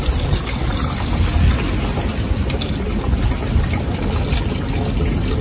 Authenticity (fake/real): real